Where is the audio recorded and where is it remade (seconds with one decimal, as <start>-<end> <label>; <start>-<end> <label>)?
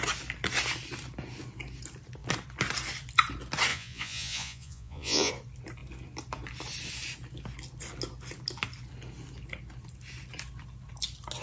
0.0-3.7 recorded; 3.7-5.3 remade; 5.3-11.4 recorded